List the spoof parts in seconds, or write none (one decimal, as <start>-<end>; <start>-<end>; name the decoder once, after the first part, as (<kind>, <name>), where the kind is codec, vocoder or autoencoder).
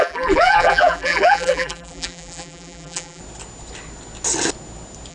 0.0-3.2 (vocoder, BigVGAN v2)